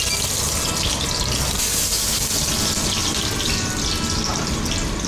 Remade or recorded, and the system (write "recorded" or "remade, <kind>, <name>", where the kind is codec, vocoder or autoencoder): recorded